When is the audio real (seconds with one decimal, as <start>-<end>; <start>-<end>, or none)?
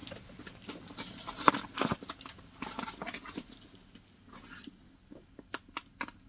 0.0-6.3